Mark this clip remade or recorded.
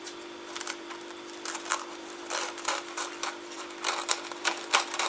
remade